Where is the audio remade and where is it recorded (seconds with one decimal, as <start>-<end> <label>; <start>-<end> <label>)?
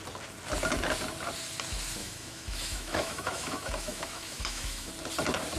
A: 0.0-2.0 recorded; 2.0-4.9 remade; 4.9-5.6 recorded